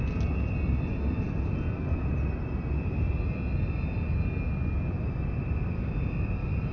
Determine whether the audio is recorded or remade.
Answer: recorded